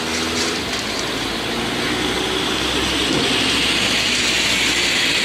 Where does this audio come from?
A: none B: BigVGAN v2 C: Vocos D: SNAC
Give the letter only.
A